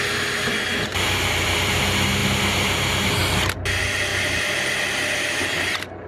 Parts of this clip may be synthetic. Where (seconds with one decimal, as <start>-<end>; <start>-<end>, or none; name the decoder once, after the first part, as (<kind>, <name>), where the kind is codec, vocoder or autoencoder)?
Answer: 0.9-1.8 (vocoder, BigVGAN v2); 4.1-4.7